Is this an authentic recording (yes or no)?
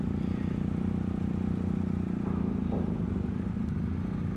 yes